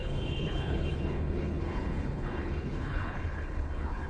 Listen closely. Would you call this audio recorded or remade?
remade